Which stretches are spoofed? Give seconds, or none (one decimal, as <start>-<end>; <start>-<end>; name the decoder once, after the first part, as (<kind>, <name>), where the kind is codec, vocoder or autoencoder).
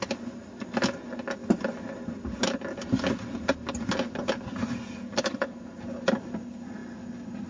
none